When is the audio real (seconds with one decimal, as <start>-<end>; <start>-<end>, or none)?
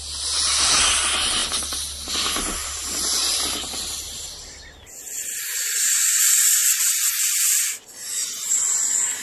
0.0-9.2